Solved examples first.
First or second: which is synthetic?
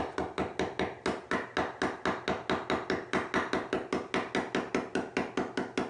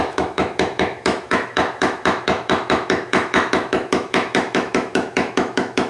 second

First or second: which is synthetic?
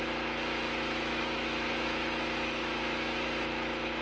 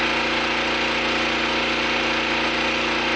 first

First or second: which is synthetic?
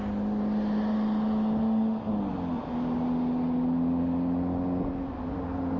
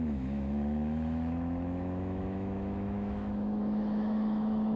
second